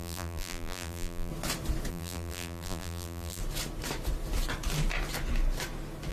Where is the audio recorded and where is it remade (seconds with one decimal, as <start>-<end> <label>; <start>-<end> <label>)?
0.0-1.3 remade; 1.3-1.9 recorded; 1.9-3.4 remade; 3.4-6.1 recorded